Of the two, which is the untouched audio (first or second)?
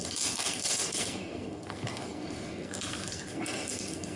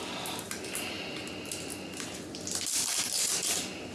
second